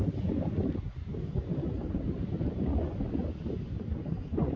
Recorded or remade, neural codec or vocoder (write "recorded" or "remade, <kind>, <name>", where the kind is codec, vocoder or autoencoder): recorded